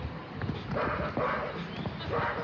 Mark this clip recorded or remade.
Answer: recorded